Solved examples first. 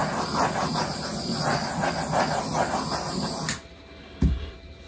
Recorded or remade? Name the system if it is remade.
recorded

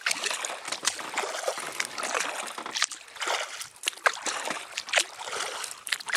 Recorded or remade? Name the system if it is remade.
recorded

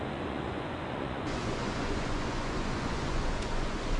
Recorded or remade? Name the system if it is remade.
remade, vocoder, Vocos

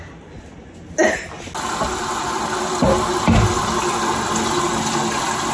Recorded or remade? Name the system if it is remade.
recorded